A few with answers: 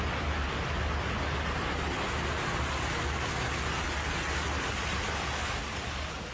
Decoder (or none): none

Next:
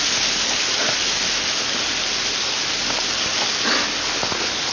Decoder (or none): none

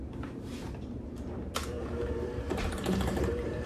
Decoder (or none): vocoder, BigVGAN v2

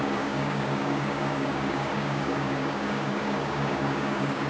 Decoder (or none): codec, DAC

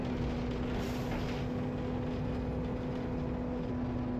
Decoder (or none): none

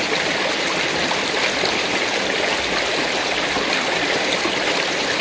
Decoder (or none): none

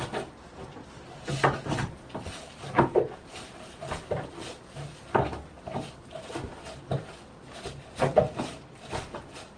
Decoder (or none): none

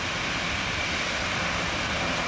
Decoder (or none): none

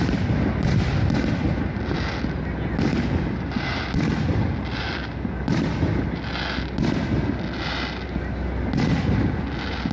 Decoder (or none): none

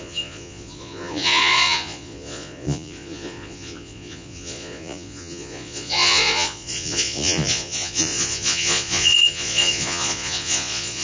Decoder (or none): vocoder, Vocos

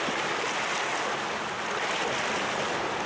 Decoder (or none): none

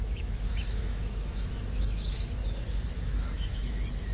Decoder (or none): autoencoder, DAC-VAE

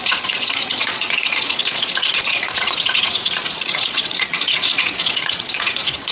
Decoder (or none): vocoder, Vocos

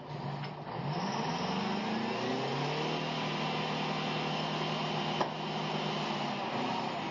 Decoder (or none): none